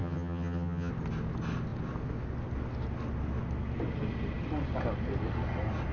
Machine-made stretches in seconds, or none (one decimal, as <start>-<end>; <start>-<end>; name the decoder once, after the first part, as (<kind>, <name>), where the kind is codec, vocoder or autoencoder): 0.0-0.9 (vocoder, HiFi-GAN)